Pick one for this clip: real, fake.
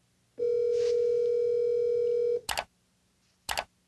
real